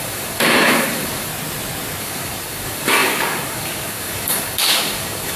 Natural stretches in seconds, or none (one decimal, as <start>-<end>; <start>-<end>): 1.3-2.0